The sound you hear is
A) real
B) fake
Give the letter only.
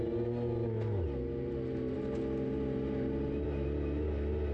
A